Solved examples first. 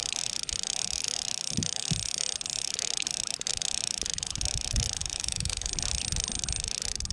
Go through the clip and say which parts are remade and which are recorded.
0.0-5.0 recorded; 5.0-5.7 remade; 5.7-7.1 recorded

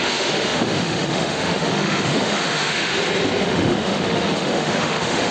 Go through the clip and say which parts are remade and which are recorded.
0.0-2.9 remade; 2.9-3.4 recorded; 3.4-5.3 remade

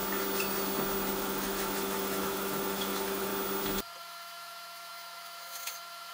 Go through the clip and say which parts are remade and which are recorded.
0.0-1.1 recorded; 1.1-3.3 remade; 3.3-4.0 recorded; 4.0-6.1 remade